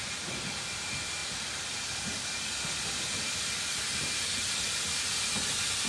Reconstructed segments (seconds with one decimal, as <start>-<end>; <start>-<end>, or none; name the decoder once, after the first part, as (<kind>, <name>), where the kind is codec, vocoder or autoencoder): 0.0-5.9 (vocoder, BigVGAN v2)